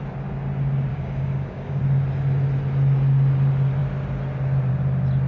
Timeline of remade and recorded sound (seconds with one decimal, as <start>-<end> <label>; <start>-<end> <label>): 0.0-0.9 recorded; 0.9-1.8 remade; 1.8-5.3 recorded